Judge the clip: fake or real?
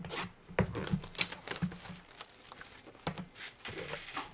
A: real